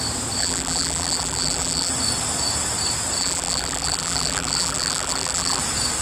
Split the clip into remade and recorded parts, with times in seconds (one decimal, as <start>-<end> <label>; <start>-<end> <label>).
0.0-0.4 recorded; 0.4-1.9 remade; 1.9-3.2 recorded; 3.2-5.6 remade; 5.6-6.0 recorded